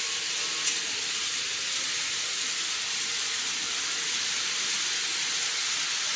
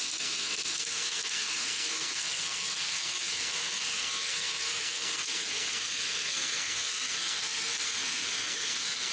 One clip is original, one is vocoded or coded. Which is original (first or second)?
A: first